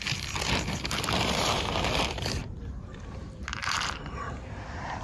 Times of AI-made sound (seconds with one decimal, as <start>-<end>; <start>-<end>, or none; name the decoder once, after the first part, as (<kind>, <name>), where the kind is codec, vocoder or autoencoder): 2.4-5.0 (vocoder, BigVGAN v2)